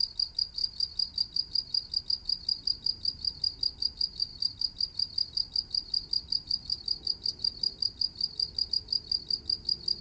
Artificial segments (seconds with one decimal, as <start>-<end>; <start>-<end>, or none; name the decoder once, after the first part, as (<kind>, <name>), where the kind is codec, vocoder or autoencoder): none